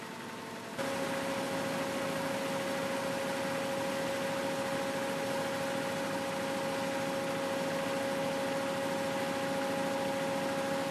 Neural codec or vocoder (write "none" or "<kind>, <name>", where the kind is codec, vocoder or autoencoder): none